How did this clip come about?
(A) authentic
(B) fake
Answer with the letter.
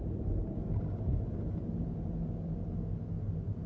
A